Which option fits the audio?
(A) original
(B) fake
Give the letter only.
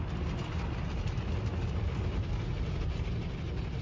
A